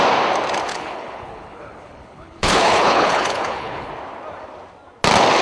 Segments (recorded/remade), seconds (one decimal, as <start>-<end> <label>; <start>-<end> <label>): 0.0-0.7 recorded; 0.7-3.9 remade; 3.9-5.4 recorded